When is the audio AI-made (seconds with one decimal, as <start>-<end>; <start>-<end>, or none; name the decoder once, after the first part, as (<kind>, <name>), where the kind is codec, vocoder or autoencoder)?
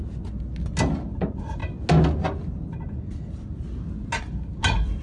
none